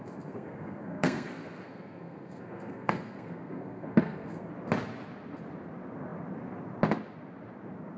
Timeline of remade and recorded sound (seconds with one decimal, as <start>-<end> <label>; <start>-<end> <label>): 0.0-4.5 remade; 4.5-8.0 recorded